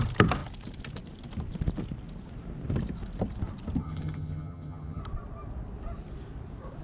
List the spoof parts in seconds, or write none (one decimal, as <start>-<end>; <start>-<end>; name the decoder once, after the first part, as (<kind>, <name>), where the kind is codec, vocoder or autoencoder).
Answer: 3.8-5.0 (vocoder, HiFi-GAN)